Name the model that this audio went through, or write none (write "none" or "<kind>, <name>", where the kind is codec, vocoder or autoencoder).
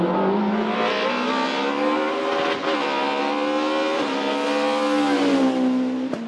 none